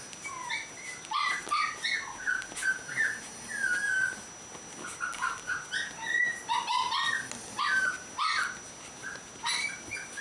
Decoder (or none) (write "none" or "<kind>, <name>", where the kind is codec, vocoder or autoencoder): none